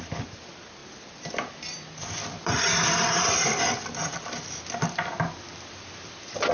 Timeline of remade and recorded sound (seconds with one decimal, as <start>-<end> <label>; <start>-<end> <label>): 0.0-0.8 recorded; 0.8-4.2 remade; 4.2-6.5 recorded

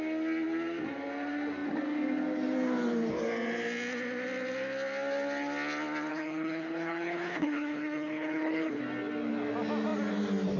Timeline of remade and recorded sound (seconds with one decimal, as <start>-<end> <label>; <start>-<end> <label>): 0.0-6.1 recorded; 6.1-8.8 remade; 8.8-10.6 recorded

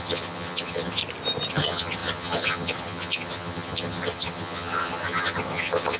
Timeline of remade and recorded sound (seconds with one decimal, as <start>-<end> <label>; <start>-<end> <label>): 0.0-1.0 remade; 1.0-1.5 recorded; 1.5-6.0 remade

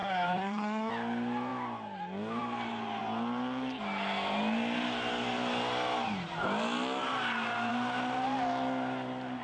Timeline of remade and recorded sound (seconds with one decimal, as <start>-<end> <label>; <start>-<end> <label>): 0.0-0.9 remade; 0.9-9.4 recorded

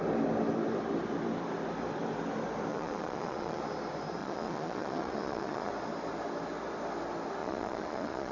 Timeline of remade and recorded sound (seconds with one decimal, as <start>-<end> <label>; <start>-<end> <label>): 0.0-2.7 recorded; 2.7-3.6 remade; 3.6-4.2 recorded; 4.2-5.7 remade; 5.7-7.4 recorded; 7.4-8.3 remade